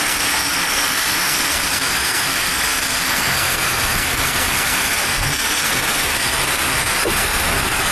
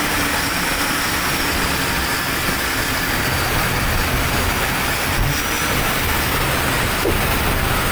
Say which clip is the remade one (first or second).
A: first